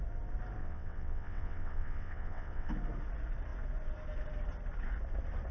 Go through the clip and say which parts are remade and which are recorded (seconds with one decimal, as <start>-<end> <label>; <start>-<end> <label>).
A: 0.0-0.6 recorded; 0.6-2.7 remade; 2.7-5.5 recorded